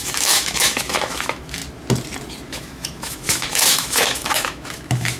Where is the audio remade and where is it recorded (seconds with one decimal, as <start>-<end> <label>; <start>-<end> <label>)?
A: 0.0-1.6 remade; 1.6-2.5 recorded; 2.5-5.2 remade